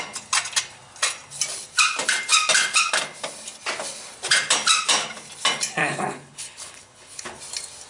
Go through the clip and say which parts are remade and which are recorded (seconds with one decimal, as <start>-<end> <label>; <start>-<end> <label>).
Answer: 0.0-5.8 recorded; 5.8-7.4 remade; 7.4-7.9 recorded